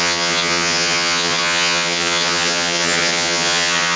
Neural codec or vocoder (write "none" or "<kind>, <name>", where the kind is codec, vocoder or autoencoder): vocoder, HiFi-GAN